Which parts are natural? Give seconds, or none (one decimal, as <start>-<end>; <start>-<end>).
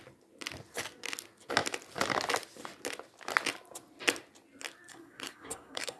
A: 0.0-4.9